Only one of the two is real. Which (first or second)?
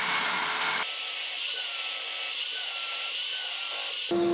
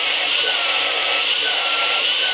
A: first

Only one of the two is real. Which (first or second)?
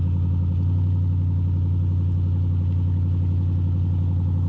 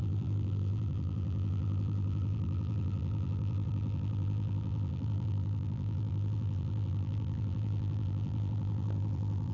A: first